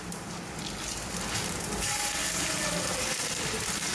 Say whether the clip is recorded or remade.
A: remade